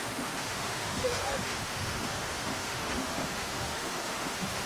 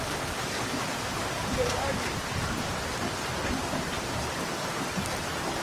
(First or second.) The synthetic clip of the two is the first